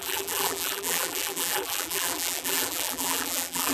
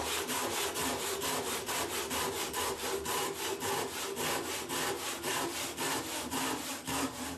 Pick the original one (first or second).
second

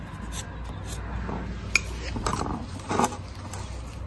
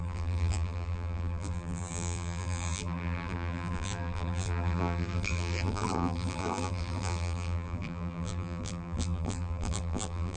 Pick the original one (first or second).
first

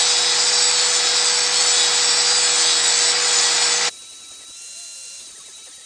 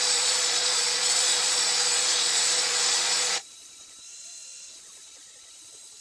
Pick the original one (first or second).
first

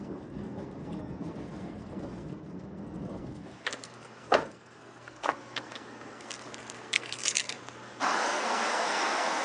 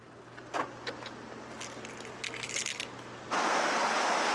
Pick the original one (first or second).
second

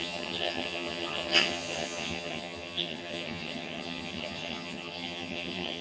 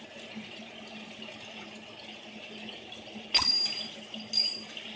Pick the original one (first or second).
second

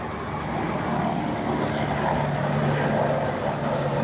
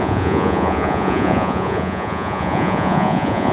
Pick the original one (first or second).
first